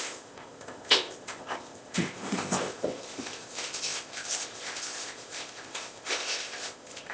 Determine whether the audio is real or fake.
fake